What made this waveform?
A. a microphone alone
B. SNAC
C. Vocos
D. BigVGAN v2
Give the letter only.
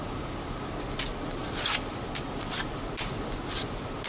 A